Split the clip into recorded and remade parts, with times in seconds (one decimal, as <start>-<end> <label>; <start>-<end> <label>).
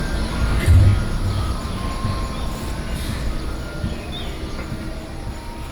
0.0-5.7 recorded